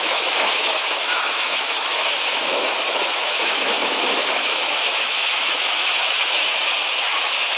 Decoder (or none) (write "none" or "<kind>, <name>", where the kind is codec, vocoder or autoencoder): autoencoder, DAC-VAE